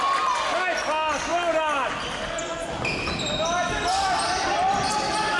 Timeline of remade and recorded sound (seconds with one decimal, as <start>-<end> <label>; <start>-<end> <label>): 0.0-5.4 recorded